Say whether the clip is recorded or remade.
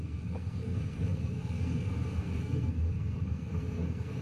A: remade